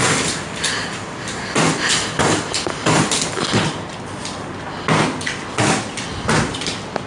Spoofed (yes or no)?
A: no